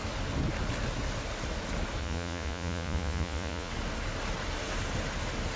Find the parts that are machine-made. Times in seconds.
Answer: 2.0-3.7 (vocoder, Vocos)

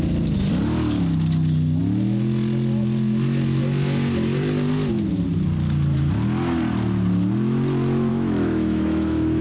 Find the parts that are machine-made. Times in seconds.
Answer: 8.1-9.4 (autoencoder, DAC-VAE)

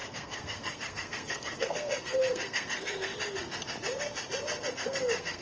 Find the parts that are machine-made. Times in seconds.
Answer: 0.0-3.1 (codec, SNAC); 4.7-5.4

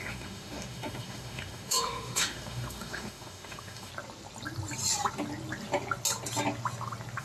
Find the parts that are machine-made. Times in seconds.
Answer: 0.0-3.9 (autoencoder, DAC-VAE)

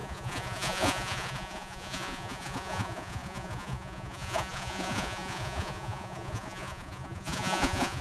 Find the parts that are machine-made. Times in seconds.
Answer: 0.0-8.0 (vocoder, Vocos)